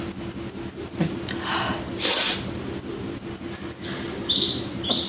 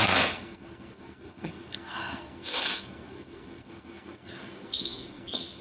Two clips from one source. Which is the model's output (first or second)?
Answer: second